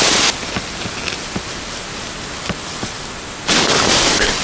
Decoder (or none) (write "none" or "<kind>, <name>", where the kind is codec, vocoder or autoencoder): none